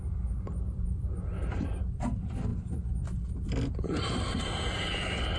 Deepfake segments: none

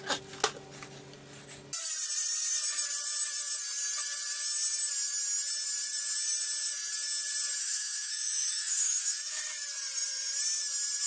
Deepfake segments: 7.6-9.4 (autoencoder, DAC-VAE)

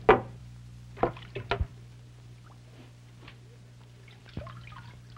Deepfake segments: none

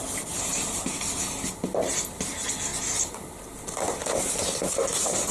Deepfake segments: none

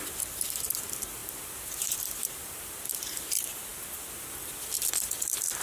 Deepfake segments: 0.0-5.6 (vocoder, BigVGAN v2)

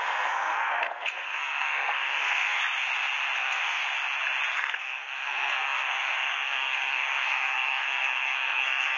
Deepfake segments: 0.0-2.6 (codec, SNAC); 3.4-3.8; 4.5-9.0

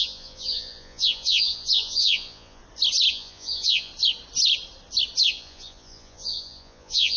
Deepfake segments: 0.0-2.6 (vocoder, Vocos); 3.1-3.9; 5.3-7.2

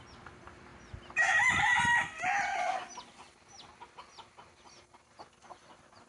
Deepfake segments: none